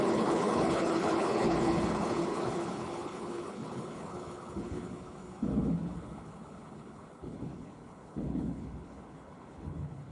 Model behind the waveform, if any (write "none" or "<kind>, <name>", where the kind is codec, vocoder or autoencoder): codec, HILCodec